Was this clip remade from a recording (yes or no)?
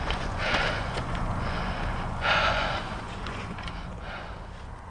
yes